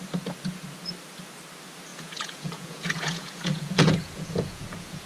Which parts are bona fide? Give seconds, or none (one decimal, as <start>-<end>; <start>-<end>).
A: 0.0-1.9